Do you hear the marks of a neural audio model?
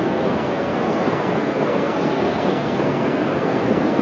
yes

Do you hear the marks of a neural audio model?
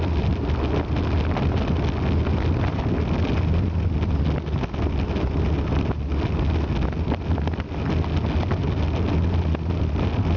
no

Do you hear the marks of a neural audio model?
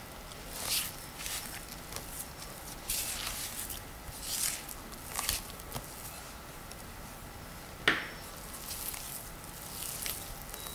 no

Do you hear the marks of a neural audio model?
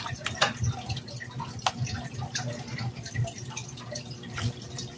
no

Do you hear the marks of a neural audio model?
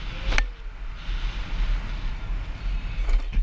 no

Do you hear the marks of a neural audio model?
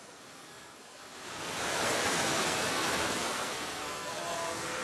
yes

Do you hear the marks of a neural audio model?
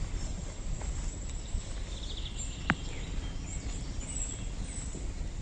no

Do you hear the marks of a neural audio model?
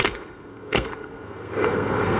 yes